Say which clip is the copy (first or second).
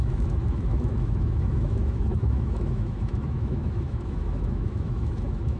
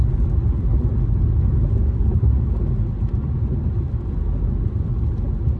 first